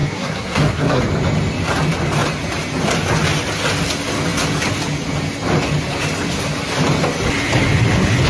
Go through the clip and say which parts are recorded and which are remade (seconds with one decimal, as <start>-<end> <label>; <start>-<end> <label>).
0.0-1.0 remade; 1.0-8.3 recorded

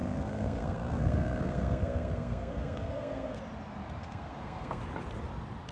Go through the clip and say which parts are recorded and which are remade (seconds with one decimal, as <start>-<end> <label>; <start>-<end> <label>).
0.0-3.4 remade; 3.4-4.0 recorded; 4.0-4.8 remade; 4.8-5.7 recorded

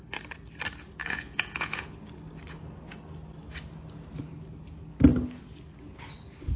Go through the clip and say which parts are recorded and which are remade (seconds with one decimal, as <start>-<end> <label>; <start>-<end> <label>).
0.0-1.0 recorded; 1.0-1.9 remade; 1.9-6.6 recorded

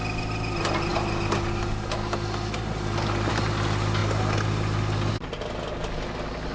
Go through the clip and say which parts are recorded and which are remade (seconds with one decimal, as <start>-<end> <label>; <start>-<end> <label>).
0.0-6.5 recorded

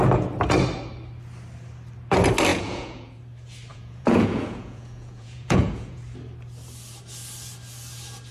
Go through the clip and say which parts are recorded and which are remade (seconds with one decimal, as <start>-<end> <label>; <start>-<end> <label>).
0.0-2.5 recorded; 2.5-3.2 remade; 3.2-3.7 recorded; 3.7-6.0 remade; 6.0-8.3 recorded

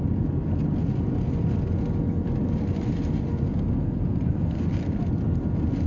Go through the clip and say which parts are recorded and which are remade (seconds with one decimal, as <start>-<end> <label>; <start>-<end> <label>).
0.0-3.3 recorded; 3.3-4.7 remade; 4.7-5.9 recorded

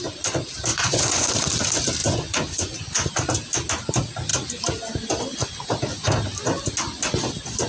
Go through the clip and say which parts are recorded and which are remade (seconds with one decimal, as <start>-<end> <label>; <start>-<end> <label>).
0.0-0.7 recorded; 0.7-1.3 remade; 1.3-2.0 recorded; 2.0-3.1 remade; 3.1-7.7 recorded

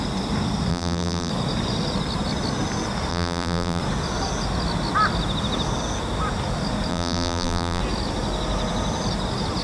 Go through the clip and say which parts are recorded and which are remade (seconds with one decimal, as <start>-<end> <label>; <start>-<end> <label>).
0.0-0.7 recorded; 0.7-1.3 remade; 1.3-3.1 recorded; 3.1-3.8 remade; 3.8-6.9 recorded; 6.9-7.8 remade; 7.8-9.6 recorded